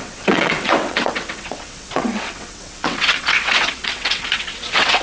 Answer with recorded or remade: remade